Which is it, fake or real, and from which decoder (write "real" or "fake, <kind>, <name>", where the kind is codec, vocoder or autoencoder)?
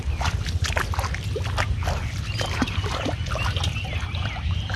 real